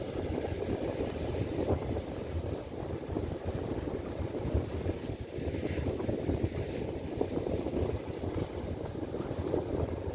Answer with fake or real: real